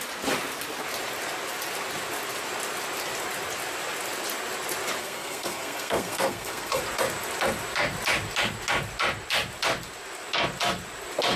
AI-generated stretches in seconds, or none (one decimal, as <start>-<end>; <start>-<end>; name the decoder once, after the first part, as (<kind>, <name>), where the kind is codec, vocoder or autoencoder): 5.0-6.8 (codec, SNAC)